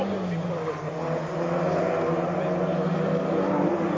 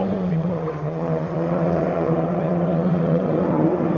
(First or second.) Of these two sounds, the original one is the first